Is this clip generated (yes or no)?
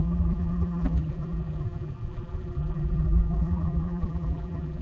yes